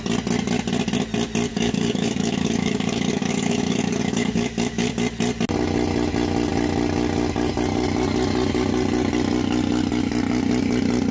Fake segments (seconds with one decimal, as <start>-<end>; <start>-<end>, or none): 1.5-4.9